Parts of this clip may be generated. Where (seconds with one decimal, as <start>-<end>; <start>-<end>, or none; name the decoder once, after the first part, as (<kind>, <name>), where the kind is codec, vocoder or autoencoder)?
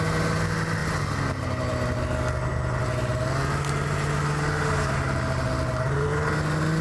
none